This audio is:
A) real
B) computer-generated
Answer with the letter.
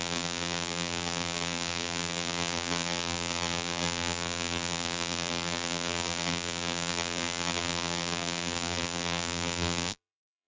B